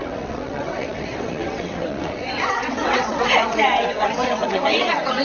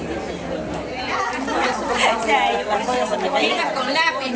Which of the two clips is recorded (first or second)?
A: second